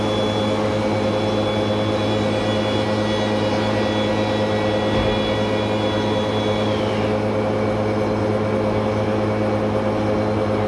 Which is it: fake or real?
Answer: real